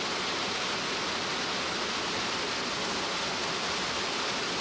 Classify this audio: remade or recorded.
recorded